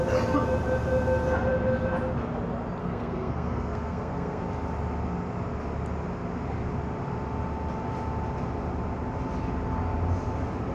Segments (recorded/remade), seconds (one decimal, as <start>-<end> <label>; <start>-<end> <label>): 0.0-2.8 recorded; 2.8-4.4 remade; 4.4-10.7 recorded